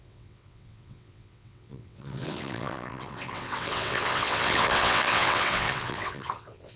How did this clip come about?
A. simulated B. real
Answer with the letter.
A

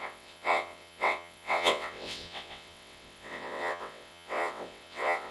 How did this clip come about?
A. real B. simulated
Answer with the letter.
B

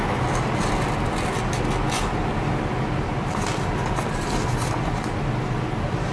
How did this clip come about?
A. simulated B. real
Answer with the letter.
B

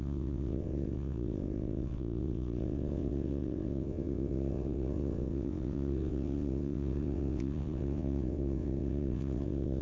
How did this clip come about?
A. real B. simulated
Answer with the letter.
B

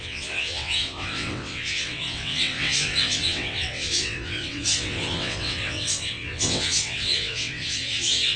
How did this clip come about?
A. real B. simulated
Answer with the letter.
B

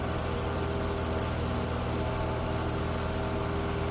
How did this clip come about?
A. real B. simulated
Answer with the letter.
A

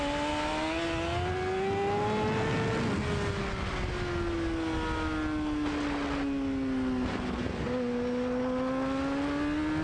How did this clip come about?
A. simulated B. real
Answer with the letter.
B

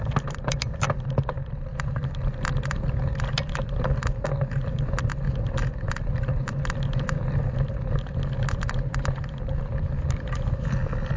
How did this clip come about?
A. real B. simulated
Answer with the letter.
A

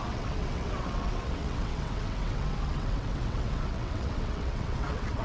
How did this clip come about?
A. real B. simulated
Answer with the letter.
B